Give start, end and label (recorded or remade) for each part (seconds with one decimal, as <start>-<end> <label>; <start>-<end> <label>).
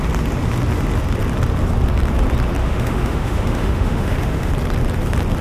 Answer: 0.0-2.6 recorded; 2.6-4.5 remade; 4.5-5.4 recorded